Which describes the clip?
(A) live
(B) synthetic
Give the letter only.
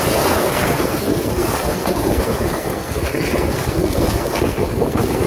B